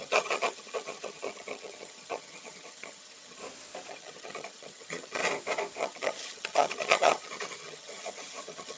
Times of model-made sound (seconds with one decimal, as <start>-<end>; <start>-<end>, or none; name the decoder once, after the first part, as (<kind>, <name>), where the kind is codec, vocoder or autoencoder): 0.0-3.4 (vocoder, HiFi-GAN); 3.9-5.2; 5.8-8.8